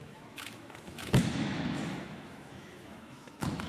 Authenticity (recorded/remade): remade